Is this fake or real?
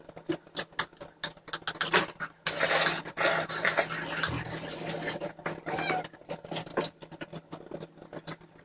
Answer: real